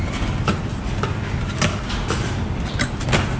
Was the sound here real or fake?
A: real